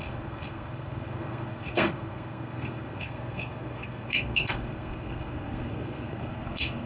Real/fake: fake